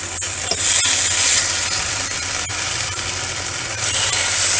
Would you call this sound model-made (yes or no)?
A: no